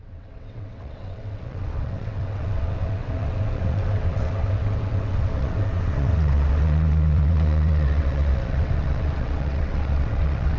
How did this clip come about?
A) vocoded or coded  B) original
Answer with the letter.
A